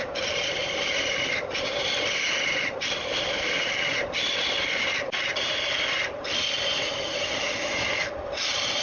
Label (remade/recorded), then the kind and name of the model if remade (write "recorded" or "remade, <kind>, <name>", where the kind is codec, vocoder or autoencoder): recorded